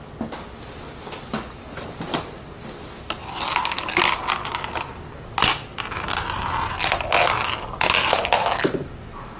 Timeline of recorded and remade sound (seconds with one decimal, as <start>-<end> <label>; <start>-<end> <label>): 0.0-3.2 recorded; 3.2-4.3 remade; 4.3-5.7 recorded; 5.7-7.8 remade; 7.8-9.4 recorded